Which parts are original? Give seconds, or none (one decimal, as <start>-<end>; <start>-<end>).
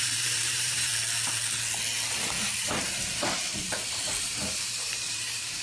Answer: 0.9-2.1; 3.4-4.2